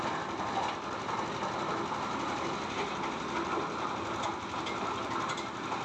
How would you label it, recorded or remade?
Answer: recorded